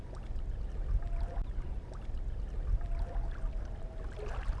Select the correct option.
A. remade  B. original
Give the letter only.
B